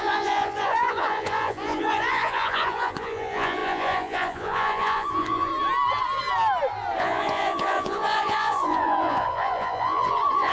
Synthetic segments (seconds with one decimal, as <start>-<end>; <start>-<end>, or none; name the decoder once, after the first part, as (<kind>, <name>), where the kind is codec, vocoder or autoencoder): 0.0-5.5 (vocoder, Vocos); 7.0-10.5